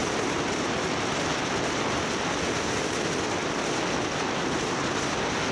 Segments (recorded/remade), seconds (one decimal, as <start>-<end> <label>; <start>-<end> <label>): 0.0-0.8 remade; 0.8-5.5 recorded